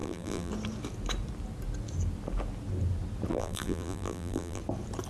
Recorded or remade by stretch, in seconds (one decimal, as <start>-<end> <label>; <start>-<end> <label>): 0.0-0.5 remade; 0.5-3.3 recorded; 3.3-4.6 remade; 4.6-5.1 recorded